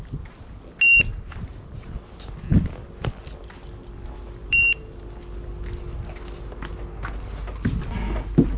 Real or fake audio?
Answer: real